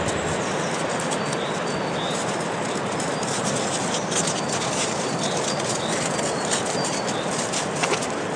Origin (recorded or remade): recorded